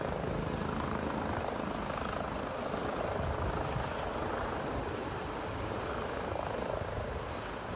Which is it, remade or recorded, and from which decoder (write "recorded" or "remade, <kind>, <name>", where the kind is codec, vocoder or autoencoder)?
recorded